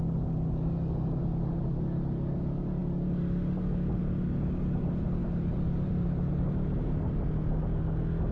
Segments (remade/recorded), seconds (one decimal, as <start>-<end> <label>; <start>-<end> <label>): 0.0-5.2 recorded; 5.2-5.9 remade; 5.9-8.3 recorded